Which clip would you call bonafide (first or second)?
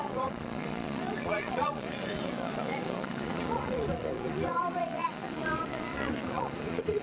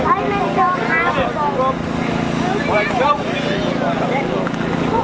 second